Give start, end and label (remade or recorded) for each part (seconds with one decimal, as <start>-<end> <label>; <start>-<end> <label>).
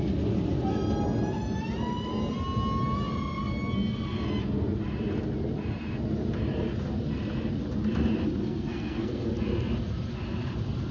0.0-8.4 recorded; 8.4-9.3 remade; 9.3-10.9 recorded